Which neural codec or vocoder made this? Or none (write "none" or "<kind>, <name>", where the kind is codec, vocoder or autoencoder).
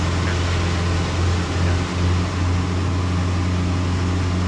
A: none